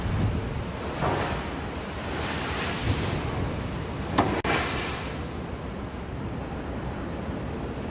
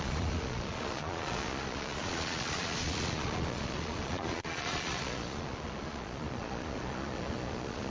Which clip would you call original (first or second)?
first